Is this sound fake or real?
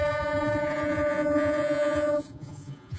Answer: fake